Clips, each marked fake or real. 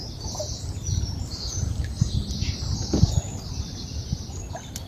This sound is real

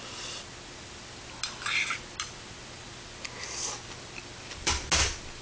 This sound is real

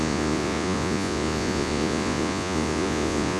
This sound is fake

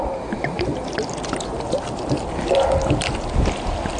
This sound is real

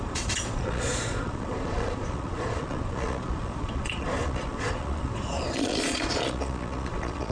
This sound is fake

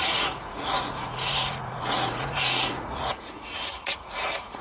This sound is fake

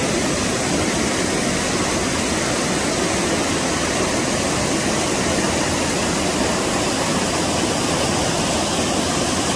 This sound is real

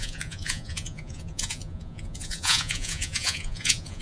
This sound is fake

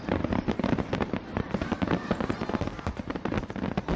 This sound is fake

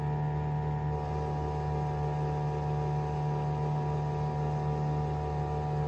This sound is real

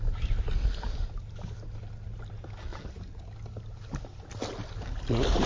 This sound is real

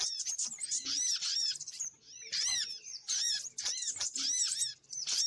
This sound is fake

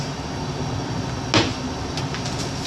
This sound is real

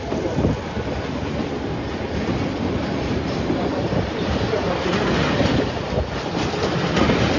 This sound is real